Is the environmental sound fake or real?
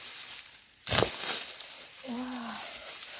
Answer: real